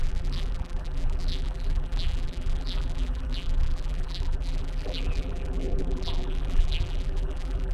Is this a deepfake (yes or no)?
yes